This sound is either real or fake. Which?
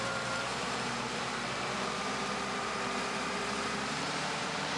fake